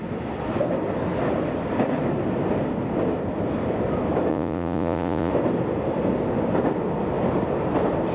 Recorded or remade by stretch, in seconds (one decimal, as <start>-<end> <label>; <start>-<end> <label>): 0.0-4.3 recorded; 4.3-5.3 remade; 5.3-8.1 recorded